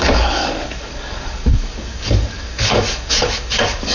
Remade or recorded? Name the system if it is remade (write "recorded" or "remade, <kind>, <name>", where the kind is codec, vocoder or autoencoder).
remade, codec, DAC